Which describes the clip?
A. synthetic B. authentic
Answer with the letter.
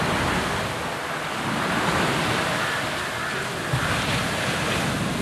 B